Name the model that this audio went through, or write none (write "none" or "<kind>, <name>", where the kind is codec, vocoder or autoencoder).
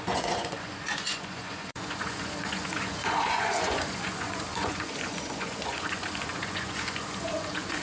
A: vocoder, Vocos